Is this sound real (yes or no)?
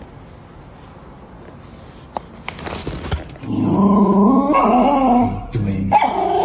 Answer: yes